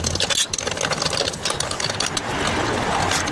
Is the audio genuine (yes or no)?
yes